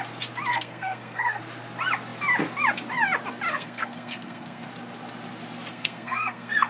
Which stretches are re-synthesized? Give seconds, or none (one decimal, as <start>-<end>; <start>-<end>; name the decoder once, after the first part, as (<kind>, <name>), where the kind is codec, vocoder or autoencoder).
0.5-1.4 (codec, SNAC); 3.5-4.7; 5.7-6.7